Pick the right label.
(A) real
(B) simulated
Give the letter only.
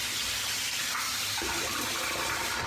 B